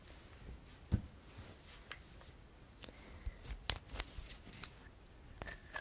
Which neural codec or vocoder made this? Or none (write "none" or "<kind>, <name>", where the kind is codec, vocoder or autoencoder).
none